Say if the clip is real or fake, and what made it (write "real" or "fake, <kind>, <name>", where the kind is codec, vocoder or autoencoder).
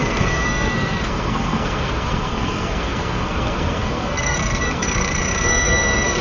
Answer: fake, codec, SNAC